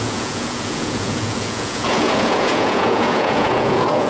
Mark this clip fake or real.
fake